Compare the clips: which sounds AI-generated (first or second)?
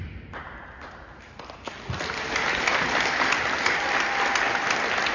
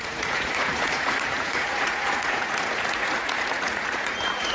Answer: second